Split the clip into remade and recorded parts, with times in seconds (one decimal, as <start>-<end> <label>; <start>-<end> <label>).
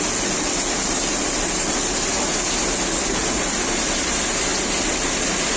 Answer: 0.0-5.6 recorded